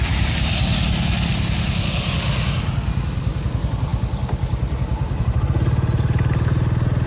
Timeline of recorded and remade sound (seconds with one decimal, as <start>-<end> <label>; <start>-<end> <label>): 0.0-7.1 recorded